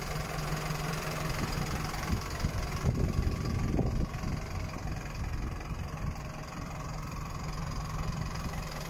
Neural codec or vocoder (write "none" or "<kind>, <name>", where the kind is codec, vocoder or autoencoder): vocoder, BigVGAN v2